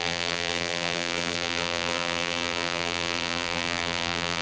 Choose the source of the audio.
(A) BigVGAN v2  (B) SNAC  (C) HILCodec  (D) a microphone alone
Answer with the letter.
A